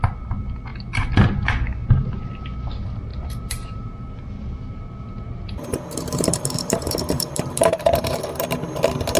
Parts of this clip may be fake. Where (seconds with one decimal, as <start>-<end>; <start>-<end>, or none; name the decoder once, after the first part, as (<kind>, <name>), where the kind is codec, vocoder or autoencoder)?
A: 3.1-8.2 (vocoder, BigVGAN v2)